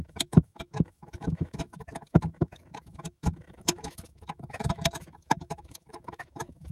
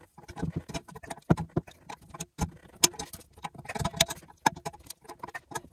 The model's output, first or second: first